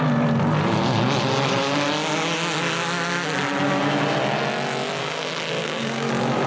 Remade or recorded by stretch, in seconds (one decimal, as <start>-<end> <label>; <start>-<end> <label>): 0.0-5.0 recorded; 5.0-6.1 remade; 6.1-6.5 recorded